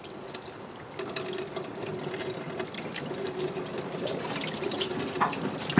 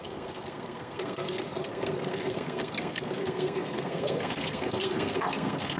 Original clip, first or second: first